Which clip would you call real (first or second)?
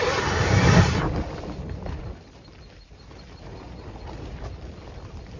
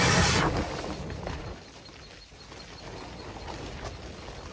second